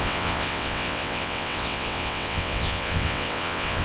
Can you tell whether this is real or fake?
fake